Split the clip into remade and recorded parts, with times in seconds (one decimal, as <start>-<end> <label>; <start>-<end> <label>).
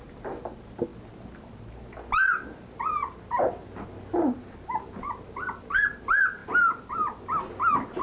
0.0-8.0 recorded